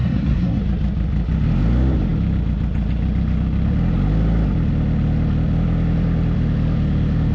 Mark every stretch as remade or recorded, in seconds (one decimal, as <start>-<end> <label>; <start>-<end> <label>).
0.0-0.6 remade; 0.6-7.3 recorded

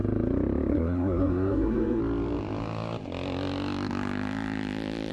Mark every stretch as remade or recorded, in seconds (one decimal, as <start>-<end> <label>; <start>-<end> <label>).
0.0-0.7 recorded; 0.7-2.0 remade; 2.0-5.1 recorded

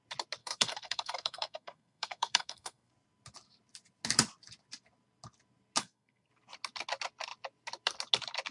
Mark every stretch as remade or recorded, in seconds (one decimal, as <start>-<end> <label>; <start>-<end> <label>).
0.0-0.4 recorded; 0.4-2.9 remade; 2.9-5.8 recorded; 5.8-6.3 remade; 6.3-8.5 recorded

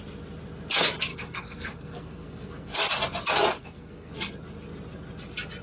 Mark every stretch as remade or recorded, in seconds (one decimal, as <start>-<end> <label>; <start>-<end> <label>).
0.0-1.1 recorded; 1.1-2.7 remade; 2.7-3.5 recorded; 3.5-4.1 remade; 4.1-5.6 recorded

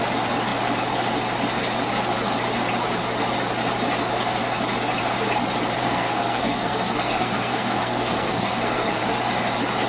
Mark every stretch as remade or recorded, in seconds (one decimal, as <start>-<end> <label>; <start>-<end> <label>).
0.0-5.8 recorded; 5.8-9.0 remade; 9.0-9.9 recorded

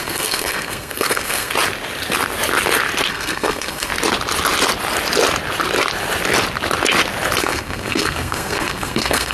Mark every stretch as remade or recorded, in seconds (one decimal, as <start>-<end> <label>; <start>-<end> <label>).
0.0-1.5 remade; 1.5-3.1 recorded; 3.1-3.9 remade; 3.9-7.4 recorded; 7.4-9.3 remade

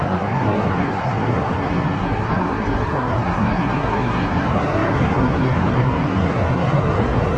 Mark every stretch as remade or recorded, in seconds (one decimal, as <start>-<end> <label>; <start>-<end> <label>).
0.0-7.4 remade